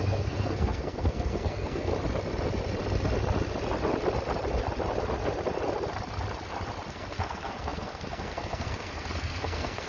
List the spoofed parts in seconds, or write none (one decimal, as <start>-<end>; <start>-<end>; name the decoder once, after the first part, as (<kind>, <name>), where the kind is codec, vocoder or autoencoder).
0.0-1.9 (codec, SNAC); 6.9-9.9